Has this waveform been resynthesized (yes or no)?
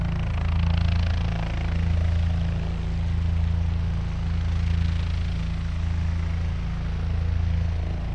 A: no